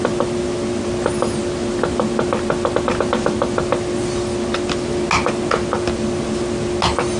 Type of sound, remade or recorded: recorded